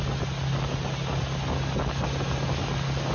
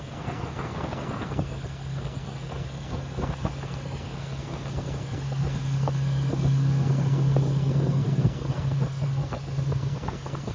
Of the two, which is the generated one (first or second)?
second